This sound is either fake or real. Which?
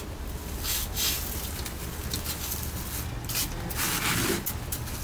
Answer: real